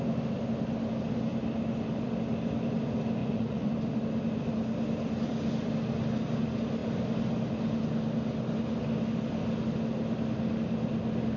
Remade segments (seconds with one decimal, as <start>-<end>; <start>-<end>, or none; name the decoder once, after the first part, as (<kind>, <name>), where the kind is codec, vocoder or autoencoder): 3.2-3.7 (vocoder, Vocos)